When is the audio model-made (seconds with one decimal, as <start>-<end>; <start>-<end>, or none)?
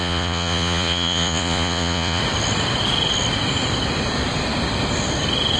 0.0-2.2